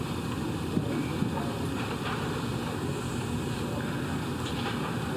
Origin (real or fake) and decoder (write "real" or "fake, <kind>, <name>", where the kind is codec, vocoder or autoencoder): real